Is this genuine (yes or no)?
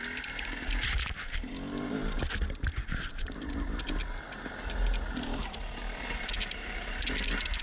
yes